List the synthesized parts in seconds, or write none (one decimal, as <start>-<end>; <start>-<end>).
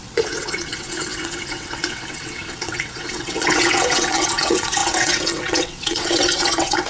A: 0.0-6.9